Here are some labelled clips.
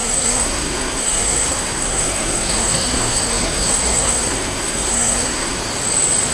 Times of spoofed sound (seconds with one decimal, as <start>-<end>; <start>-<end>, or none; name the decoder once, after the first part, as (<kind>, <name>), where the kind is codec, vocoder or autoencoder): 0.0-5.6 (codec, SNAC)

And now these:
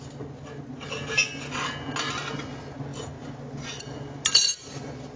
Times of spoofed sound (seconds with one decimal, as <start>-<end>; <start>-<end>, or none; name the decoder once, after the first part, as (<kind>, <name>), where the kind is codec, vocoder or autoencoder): none

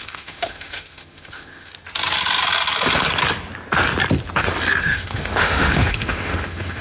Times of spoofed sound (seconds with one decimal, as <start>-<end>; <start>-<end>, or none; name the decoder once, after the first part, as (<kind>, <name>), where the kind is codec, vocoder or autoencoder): 0.0-1.7 (autoencoder, DAC-VAE); 4.8-6.8

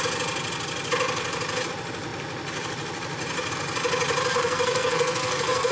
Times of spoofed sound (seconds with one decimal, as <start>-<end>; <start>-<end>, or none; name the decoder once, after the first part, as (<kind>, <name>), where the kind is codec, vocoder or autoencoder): 4.3-5.7 (codec, SNAC)

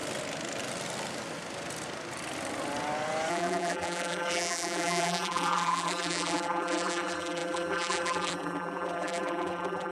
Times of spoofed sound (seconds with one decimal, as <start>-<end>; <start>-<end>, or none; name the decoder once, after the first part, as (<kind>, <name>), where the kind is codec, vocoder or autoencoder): 3.3-9.9 (vocoder, BigVGAN v2)

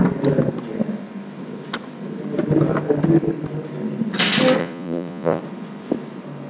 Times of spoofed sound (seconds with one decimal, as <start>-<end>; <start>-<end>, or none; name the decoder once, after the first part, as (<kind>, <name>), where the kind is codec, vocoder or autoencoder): 4.6-5.4 (vocoder, Vocos)

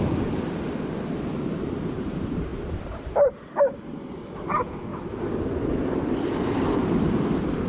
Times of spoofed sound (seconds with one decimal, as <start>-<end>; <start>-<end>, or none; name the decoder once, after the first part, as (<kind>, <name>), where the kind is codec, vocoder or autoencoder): 0.0-7.7 (vocoder, BigVGAN v2)